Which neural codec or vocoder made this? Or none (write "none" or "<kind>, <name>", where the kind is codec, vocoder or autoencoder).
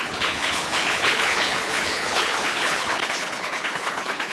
codec, HILCodec